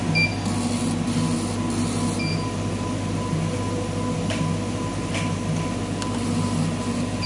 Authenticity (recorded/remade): recorded